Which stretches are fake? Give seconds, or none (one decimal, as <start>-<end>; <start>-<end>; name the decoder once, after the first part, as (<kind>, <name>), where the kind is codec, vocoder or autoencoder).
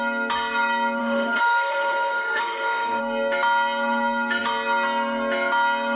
1.0-3.0 (autoencoder, DAC-VAE)